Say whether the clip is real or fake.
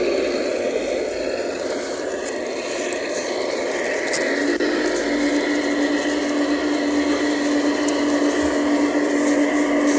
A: real